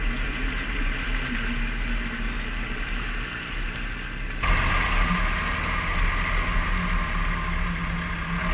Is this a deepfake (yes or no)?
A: no